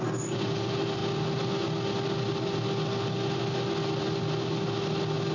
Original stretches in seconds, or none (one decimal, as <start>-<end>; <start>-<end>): 0.0-5.3